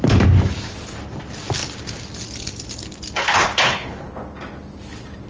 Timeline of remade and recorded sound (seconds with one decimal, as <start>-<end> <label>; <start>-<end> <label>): 0.0-3.2 recorded; 3.2-4.1 remade; 4.1-5.3 recorded